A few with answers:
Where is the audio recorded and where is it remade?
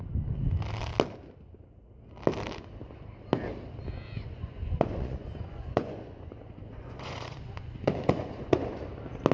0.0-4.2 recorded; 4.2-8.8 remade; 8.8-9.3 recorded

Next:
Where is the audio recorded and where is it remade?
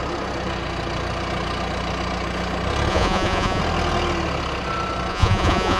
0.0-2.9 recorded; 2.9-3.6 remade; 3.6-5.1 recorded; 5.1-5.8 remade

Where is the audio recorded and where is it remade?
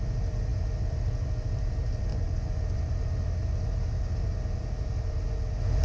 0.0-2.1 recorded; 2.1-2.9 remade; 2.9-5.8 recorded